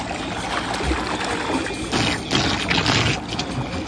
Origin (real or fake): real